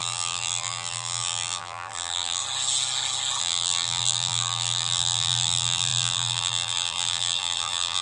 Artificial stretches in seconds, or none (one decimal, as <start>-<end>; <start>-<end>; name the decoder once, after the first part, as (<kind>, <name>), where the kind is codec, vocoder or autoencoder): 0.0-2.4 (vocoder, BigVGAN v2); 3.4-8.0